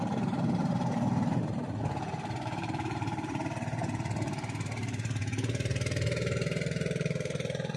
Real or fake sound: fake